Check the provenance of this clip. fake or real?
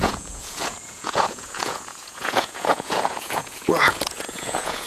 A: fake